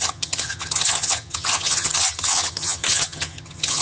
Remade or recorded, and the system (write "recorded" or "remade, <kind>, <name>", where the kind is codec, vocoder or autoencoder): remade, vocoder, HiFi-GAN